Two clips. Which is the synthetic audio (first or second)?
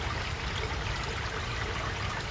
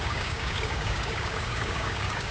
second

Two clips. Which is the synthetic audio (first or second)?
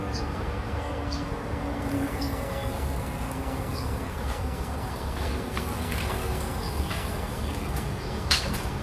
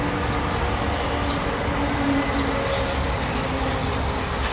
first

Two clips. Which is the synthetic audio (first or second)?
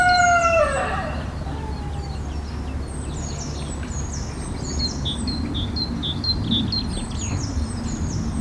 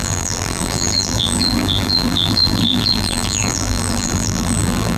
second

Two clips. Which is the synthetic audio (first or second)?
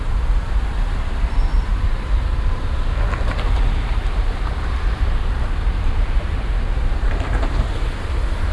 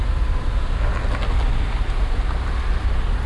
first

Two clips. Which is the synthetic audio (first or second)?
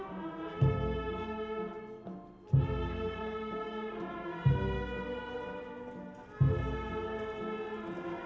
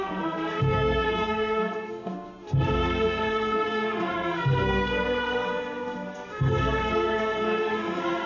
second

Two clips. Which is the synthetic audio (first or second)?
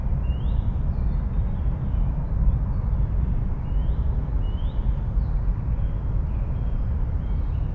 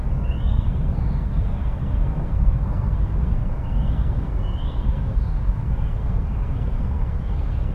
second